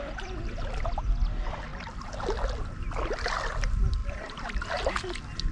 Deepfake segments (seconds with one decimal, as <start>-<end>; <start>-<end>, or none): 4.0-4.9

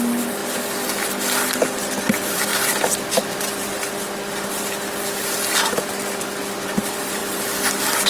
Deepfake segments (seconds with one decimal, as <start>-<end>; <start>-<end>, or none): 0.0-0.4; 1.4-7.2